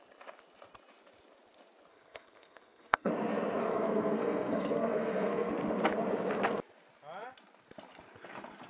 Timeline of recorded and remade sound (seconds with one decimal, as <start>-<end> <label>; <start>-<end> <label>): 0.0-1.9 recorded; 1.9-3.1 remade; 3.1-3.6 recorded; 3.6-5.5 remade; 5.5-8.7 recorded